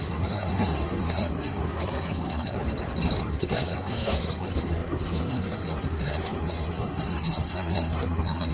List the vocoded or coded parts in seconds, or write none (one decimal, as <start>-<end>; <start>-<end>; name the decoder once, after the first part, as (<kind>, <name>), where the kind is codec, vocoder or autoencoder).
0.0-2.6 (codec, SNAC); 3.2-8.5